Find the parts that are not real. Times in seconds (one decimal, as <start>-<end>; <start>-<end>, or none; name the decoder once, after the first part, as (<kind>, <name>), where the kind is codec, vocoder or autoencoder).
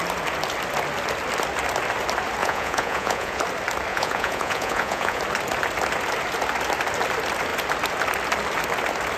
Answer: 2.4-3.4 (vocoder, Vocos); 3.9-5.2